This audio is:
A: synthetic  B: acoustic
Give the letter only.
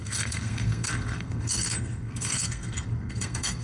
A